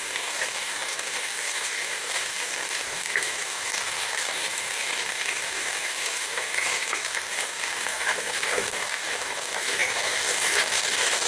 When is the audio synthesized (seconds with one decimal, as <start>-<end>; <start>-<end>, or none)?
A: 0.0-11.3